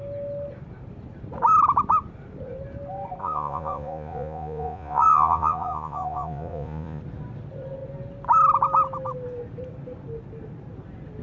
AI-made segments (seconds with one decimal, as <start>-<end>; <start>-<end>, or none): 3.2-7.0